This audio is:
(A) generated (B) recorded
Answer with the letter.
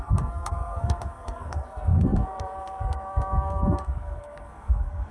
A